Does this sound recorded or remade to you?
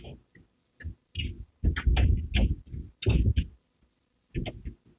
recorded